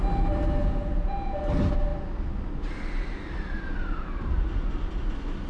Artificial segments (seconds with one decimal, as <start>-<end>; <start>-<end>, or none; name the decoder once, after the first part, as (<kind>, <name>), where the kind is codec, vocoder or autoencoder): 0.6-1.4 (vocoder, Vocos)

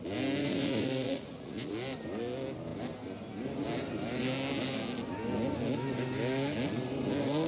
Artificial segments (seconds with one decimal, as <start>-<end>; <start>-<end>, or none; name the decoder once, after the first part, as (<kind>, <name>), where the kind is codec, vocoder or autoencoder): 0.4-1.7 (vocoder, Vocos)